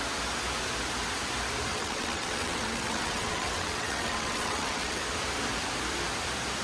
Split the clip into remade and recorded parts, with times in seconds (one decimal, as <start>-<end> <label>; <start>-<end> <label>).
0.0-1.7 recorded; 1.7-5.0 remade; 5.0-6.6 recorded